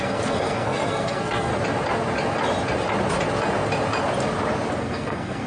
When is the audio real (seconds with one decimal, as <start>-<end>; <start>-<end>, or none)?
1.5-4.8